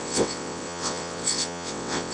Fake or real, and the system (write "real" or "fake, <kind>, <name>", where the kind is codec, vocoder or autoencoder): fake, vocoder, WaveNeXt